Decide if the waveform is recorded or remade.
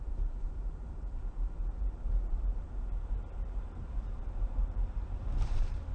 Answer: remade